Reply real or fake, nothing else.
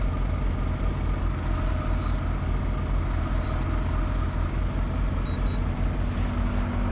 real